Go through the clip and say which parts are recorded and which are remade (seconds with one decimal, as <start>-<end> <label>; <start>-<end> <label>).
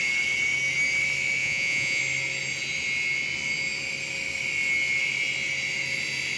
0.0-1.4 recorded; 1.4-2.0 remade; 2.0-6.4 recorded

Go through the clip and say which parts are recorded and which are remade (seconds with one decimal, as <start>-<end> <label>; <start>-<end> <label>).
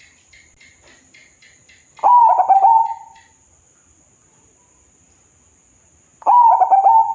0.0-7.1 recorded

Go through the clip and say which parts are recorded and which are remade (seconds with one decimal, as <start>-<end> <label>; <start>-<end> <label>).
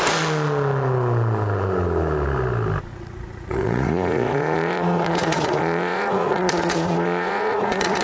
0.0-2.9 recorded; 2.9-8.0 remade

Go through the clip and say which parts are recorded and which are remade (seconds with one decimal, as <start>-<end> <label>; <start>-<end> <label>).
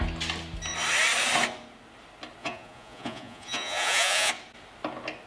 0.0-2.4 recorded; 2.4-4.3 remade; 4.3-5.3 recorded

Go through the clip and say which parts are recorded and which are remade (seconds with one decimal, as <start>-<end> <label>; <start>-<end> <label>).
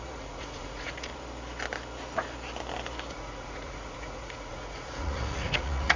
0.0-1.1 remade; 1.1-3.1 recorded; 3.1-6.0 remade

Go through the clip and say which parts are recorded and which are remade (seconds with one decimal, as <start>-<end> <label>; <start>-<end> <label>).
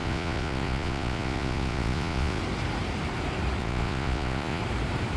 0.0-2.4 remade; 2.4-3.6 recorded; 3.6-4.6 remade; 4.6-5.2 recorded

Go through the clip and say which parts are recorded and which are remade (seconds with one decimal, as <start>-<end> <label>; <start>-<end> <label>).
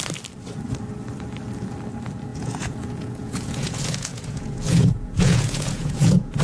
0.0-2.3 recorded; 2.3-6.4 remade